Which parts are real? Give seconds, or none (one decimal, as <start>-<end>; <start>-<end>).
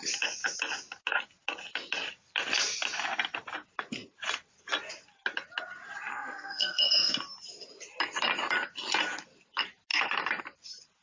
0.0-6.1; 7.1-11.0